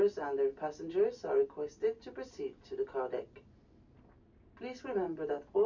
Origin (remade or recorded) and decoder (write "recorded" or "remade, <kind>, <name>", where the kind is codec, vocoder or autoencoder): recorded